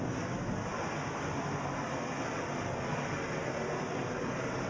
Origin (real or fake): real